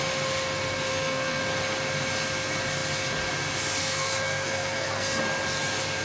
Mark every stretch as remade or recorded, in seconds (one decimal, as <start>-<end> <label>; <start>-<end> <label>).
0.0-0.9 recorded; 0.9-1.4 remade; 1.4-3.8 recorded; 3.8-5.2 remade; 5.2-6.0 recorded